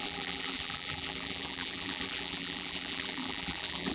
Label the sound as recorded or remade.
remade